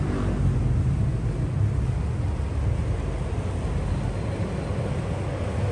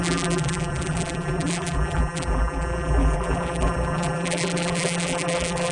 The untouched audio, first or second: first